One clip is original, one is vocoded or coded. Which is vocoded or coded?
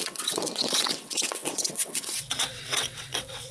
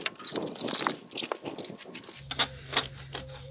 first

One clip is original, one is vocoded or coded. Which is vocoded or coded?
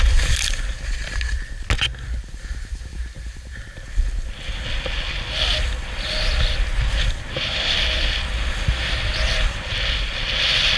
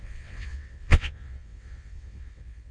second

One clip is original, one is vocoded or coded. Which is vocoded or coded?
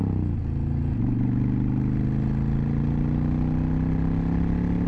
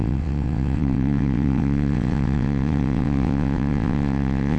second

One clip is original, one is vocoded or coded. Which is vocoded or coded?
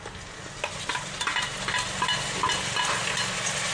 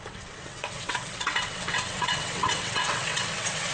second